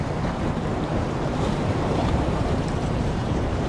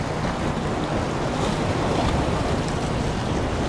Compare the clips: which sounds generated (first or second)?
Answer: first